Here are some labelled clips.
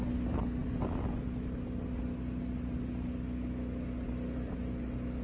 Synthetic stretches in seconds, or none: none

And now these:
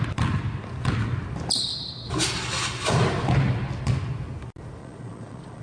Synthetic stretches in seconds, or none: 4.8-5.6 (vocoder, Vocos)

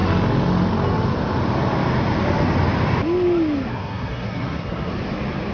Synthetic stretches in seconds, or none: 3.7-4.9 (codec, SNAC)

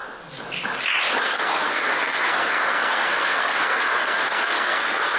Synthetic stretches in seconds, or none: 1.2-5.2 (codec, SNAC)

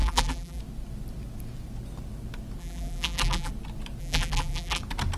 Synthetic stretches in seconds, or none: 0.0-0.6 (vocoder, BigVGAN v2); 2.6-3.5; 4.0-4.8

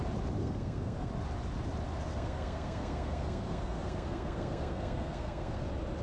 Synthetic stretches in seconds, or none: 0.4-1.1 (codec, SNAC); 2.1-5.6